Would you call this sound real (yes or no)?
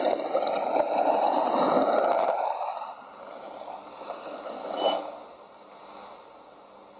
yes